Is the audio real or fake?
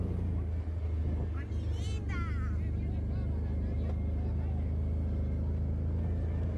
real